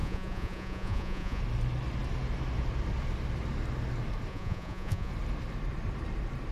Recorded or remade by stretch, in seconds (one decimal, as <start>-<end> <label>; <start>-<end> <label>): 0.0-1.4 remade; 1.4-4.3 recorded; 4.3-5.1 remade; 5.1-6.5 recorded